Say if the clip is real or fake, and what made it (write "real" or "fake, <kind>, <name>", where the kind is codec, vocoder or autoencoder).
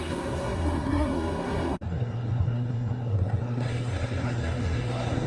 fake, codec, SNAC